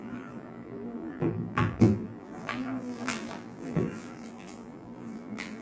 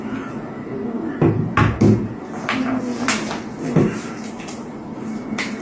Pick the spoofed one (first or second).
first